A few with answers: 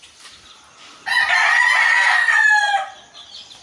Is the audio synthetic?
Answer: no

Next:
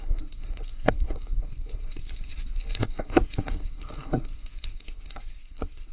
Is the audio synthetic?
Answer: yes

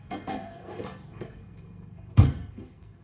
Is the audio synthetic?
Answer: yes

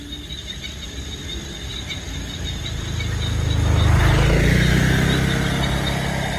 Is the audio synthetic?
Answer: no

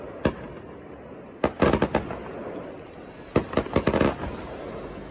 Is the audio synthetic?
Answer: no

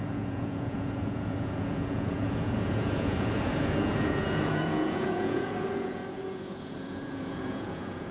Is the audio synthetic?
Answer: yes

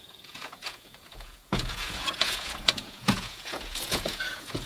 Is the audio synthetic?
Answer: yes